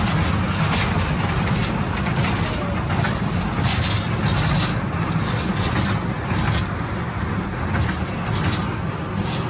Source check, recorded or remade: recorded